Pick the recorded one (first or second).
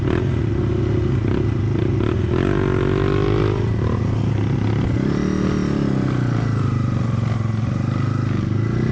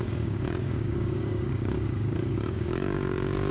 first